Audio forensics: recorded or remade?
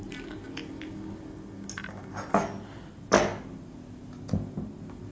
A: recorded